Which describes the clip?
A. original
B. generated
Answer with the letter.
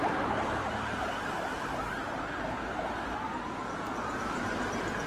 B